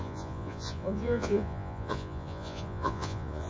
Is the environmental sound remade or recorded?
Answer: remade